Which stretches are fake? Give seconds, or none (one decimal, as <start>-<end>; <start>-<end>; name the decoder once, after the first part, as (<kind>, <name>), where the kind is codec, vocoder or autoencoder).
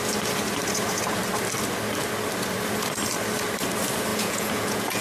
4.1-5.0 (vocoder, Vocos)